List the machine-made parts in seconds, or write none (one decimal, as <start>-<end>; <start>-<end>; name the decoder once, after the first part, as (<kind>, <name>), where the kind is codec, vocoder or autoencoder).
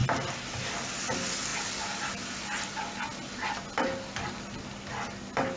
none